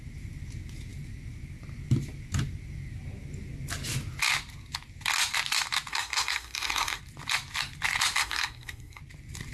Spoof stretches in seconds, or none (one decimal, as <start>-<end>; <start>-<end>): 5.9-7.0; 8.2-9.0